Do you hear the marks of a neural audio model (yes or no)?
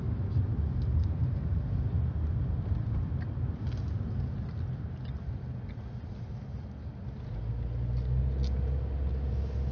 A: no